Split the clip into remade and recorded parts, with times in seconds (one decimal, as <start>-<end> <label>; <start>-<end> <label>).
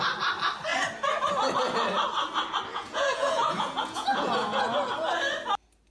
0.0-2.7 recorded; 2.7-4.6 remade; 4.6-5.9 recorded